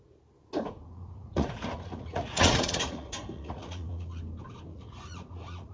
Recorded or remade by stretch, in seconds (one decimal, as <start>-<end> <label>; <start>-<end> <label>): 0.0-0.8 recorded; 0.8-4.2 remade; 4.2-4.7 recorded; 4.7-5.7 remade